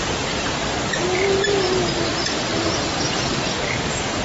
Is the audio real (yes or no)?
yes